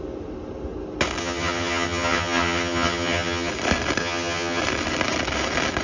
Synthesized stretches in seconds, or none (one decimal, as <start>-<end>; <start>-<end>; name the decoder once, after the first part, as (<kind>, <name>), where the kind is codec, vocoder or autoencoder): 1.2-3.5 (vocoder, HiFi-GAN); 4.0-4.6